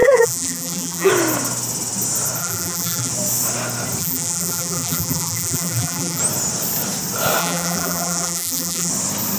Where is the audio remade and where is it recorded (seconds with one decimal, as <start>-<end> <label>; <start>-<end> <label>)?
0.0-1.1 remade; 1.1-2.4 recorded; 2.4-3.1 remade; 3.1-4.0 recorded; 4.0-6.2 remade; 6.2-7.4 recorded; 7.4-8.9 remade; 8.9-9.4 recorded

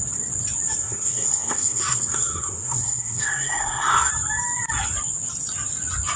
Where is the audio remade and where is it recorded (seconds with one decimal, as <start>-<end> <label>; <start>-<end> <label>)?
0.0-0.8 recorded; 0.8-4.1 remade; 4.1-6.2 recorded

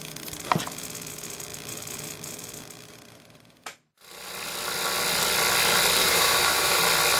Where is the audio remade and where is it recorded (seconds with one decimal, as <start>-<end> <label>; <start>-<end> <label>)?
0.0-6.0 recorded; 6.0-6.8 remade; 6.8-7.2 recorded